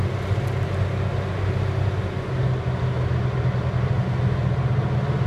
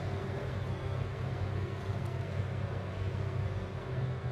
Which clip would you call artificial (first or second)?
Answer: second